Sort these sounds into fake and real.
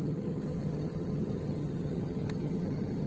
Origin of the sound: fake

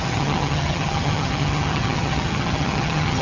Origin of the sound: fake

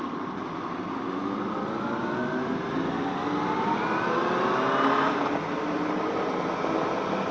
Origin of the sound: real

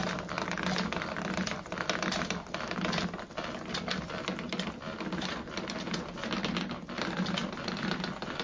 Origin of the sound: real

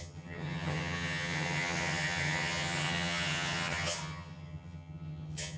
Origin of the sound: fake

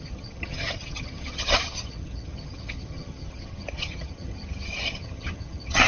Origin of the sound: fake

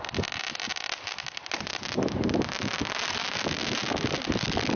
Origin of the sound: real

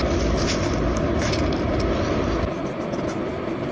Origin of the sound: real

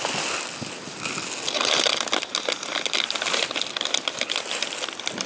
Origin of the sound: real